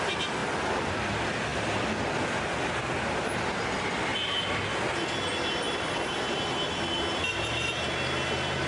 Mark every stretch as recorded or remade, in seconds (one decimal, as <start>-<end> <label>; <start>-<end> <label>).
0.0-0.4 recorded; 0.4-1.1 remade; 1.1-4.1 recorded; 4.1-4.6 remade; 4.6-5.3 recorded; 5.3-6.6 remade; 6.6-8.7 recorded